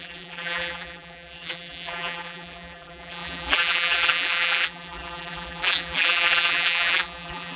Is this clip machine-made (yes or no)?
yes